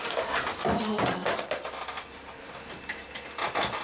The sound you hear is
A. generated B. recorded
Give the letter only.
A